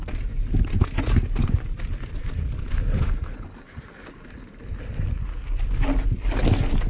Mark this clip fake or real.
real